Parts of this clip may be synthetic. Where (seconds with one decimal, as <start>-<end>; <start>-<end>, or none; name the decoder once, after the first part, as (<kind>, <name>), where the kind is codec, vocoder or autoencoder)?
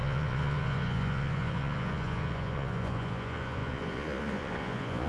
0.0-5.1 (vocoder, Vocos)